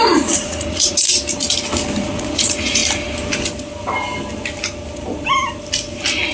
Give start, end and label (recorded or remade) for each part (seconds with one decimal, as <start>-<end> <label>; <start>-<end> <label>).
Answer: 0.0-1.1 remade; 1.1-2.0 recorded; 2.0-2.8 remade; 2.8-6.3 recorded